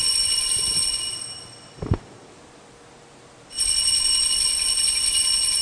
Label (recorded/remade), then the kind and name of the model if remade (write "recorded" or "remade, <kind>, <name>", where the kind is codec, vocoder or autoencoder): recorded